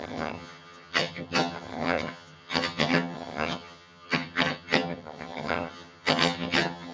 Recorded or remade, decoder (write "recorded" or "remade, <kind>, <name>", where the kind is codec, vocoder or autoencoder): remade, vocoder, HiFi-GAN